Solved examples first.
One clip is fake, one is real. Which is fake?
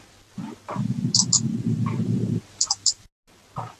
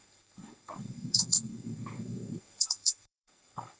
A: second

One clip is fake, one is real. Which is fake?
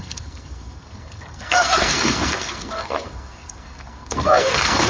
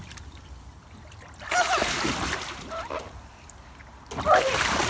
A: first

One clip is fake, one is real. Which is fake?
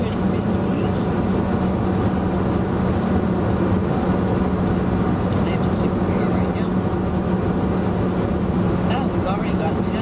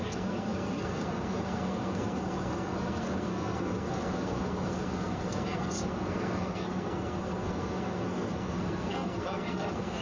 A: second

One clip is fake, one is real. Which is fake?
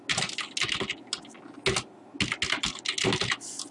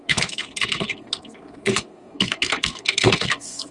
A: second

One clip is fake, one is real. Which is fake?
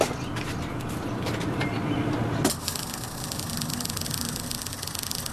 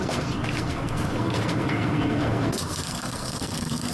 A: second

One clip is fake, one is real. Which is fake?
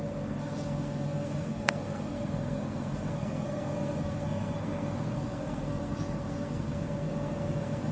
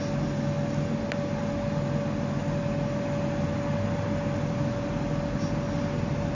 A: first